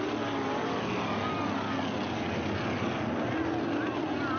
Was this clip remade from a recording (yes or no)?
no